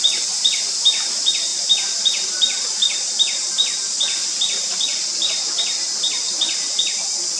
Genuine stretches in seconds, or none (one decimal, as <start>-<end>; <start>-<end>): 0.0-7.4